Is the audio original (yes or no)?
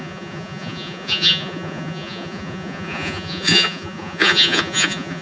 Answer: no